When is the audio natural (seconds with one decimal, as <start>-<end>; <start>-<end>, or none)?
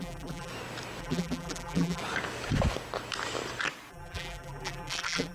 0.5-1.0; 2.0-3.9